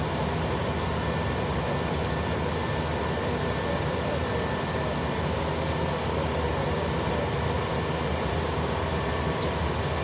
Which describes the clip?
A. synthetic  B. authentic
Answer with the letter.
B